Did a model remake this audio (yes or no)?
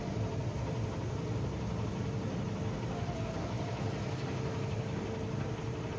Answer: no